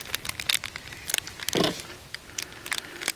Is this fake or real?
real